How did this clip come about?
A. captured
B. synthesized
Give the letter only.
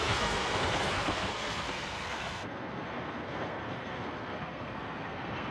B